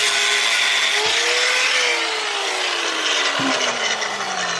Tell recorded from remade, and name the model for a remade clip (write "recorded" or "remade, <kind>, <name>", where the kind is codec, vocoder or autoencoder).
recorded